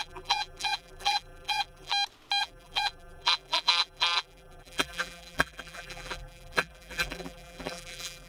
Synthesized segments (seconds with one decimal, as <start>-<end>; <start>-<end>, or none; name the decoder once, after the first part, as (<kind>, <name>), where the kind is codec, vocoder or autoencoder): 0.0-1.9 (vocoder, BigVGAN v2); 2.4-8.3